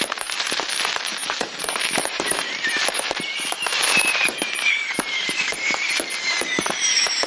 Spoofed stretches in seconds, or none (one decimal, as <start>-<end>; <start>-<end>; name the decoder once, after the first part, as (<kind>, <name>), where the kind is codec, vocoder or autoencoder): 0.0-7.3 (vocoder, BigVGAN v2)